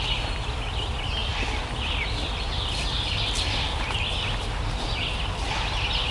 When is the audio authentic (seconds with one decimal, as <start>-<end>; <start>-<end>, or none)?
0.0-6.1